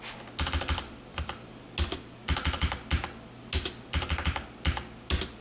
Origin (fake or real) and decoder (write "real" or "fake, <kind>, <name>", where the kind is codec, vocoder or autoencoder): real